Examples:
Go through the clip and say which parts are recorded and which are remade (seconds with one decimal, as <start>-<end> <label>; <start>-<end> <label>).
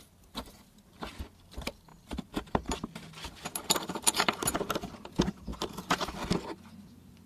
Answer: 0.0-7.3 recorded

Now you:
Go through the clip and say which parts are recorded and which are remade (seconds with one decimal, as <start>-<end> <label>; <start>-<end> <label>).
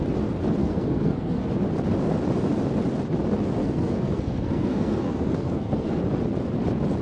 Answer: 0.0-0.6 recorded; 0.6-1.5 remade; 1.5-3.6 recorded; 3.6-6.0 remade; 6.0-7.0 recorded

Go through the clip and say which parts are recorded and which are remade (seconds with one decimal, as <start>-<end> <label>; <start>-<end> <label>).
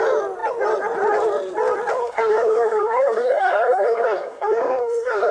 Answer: 0.0-2.0 recorded; 2.0-5.3 remade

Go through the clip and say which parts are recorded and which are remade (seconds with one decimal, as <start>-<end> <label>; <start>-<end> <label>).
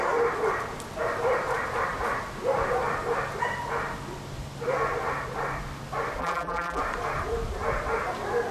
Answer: 0.0-6.2 recorded; 6.2-6.8 remade; 6.8-8.5 recorded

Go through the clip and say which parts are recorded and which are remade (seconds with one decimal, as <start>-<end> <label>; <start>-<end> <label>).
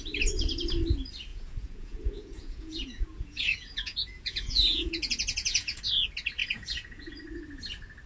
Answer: 0.0-1.3 recorded; 1.3-5.8 remade; 5.8-6.4 recorded; 6.4-7.1 remade; 7.1-8.1 recorded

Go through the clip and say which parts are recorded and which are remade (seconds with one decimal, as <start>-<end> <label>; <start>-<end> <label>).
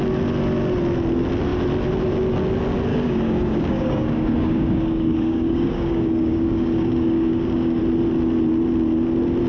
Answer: 0.0-2.9 recorded; 2.9-7.8 remade; 7.8-9.5 recorded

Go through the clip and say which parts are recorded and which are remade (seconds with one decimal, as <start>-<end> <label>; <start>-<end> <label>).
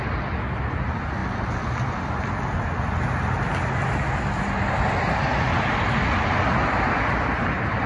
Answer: 0.0-7.9 recorded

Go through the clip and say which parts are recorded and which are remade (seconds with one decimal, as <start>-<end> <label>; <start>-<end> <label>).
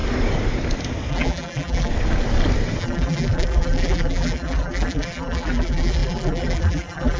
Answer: 0.0-1.1 recorded; 1.1-1.9 remade; 1.9-2.8 recorded; 2.8-7.2 remade